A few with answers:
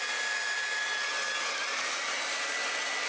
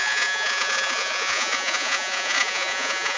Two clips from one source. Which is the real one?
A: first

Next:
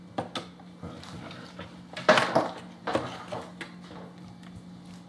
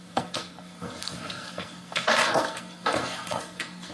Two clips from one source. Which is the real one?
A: first